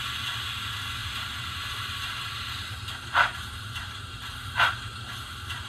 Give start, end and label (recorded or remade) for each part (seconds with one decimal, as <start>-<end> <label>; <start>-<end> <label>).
0.0-1.0 recorded; 1.0-2.7 remade; 2.7-3.3 recorded; 3.3-5.7 remade